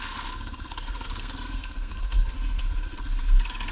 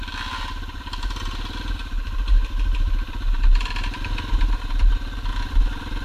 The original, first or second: second